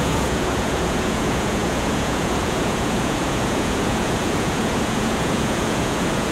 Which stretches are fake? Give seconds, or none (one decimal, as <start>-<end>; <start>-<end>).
0.0-6.3